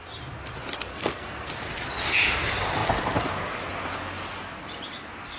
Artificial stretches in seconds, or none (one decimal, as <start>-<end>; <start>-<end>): 0.9-1.5